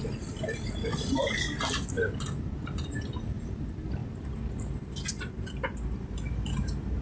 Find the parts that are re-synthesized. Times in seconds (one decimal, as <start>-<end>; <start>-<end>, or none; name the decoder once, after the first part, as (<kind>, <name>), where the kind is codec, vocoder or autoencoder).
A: none